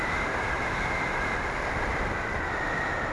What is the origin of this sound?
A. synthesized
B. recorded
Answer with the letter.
B